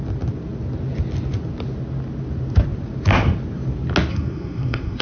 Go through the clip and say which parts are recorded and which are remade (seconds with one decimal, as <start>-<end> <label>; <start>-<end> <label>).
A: 0.0-4.1 recorded; 4.1-5.0 remade